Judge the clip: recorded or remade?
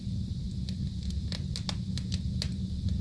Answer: recorded